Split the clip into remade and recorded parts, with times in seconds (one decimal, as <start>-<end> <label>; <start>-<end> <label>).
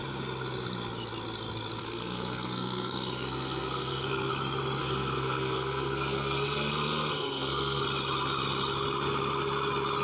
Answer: 0.0-1.8 recorded; 1.8-4.3 remade; 4.3-4.8 recorded; 4.8-7.8 remade; 7.8-10.0 recorded